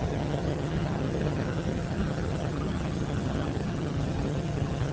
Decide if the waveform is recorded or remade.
remade